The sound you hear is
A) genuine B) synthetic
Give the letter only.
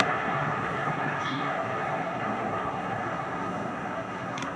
B